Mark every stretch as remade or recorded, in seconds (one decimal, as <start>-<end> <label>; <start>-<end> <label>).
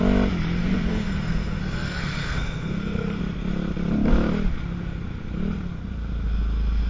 0.0-0.6 recorded; 0.6-1.6 remade; 1.6-2.0 recorded; 2.0-3.2 remade; 3.2-6.9 recorded